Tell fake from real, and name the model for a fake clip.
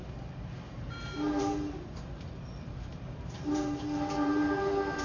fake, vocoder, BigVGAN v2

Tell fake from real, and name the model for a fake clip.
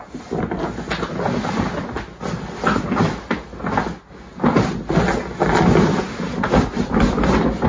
real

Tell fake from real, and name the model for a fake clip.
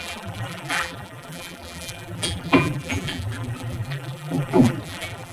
fake, vocoder, BigVGAN v2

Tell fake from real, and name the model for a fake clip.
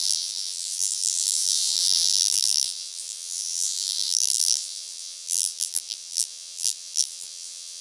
fake, vocoder, BigVGAN v2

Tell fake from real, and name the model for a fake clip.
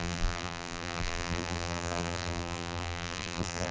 fake, vocoder, BigVGAN v2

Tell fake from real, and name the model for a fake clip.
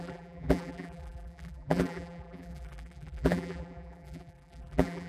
fake, vocoder, BigVGAN v2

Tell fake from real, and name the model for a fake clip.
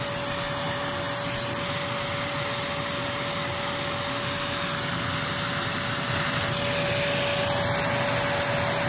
real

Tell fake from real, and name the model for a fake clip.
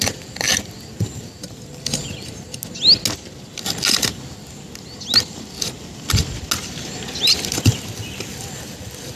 real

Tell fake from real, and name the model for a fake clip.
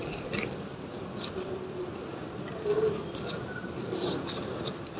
real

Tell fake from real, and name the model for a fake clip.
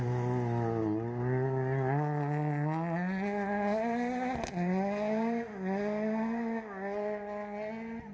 real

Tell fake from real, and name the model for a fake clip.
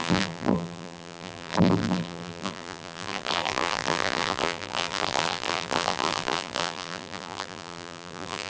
fake, vocoder, BigVGAN v2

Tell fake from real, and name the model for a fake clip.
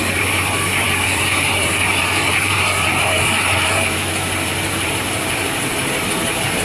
fake, vocoder, BigVGAN v2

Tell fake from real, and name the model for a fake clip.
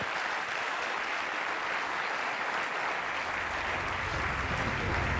real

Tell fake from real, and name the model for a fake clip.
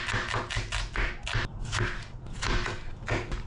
real